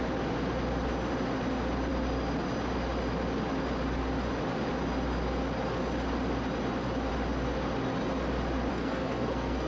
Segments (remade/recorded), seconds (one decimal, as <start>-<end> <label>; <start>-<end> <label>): 0.0-8.7 recorded; 8.7-9.7 remade

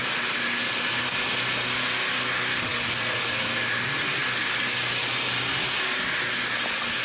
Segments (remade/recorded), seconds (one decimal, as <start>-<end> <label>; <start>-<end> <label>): 0.0-7.0 recorded

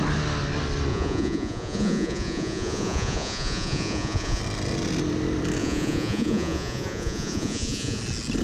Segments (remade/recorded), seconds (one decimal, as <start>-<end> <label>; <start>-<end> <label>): 0.0-0.9 recorded; 0.9-4.4 remade; 4.4-5.6 recorded; 5.6-8.0 remade; 8.0-8.4 recorded